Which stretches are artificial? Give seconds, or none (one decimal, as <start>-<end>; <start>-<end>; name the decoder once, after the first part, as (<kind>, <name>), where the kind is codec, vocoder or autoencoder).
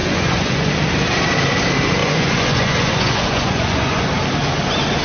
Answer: 0.0-0.7 (vocoder, Vocos); 2.0-4.1